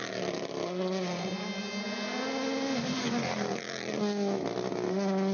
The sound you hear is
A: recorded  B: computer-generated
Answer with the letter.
A